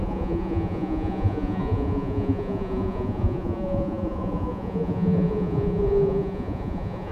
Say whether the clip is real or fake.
fake